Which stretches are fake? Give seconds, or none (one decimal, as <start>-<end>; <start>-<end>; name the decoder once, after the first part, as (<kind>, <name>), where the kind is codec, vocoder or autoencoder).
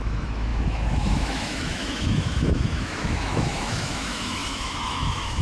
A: 0.0-5.4 (autoencoder, DAC-VAE)